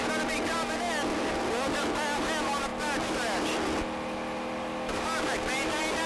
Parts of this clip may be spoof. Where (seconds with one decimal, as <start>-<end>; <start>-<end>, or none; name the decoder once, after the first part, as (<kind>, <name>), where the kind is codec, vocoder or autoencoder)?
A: none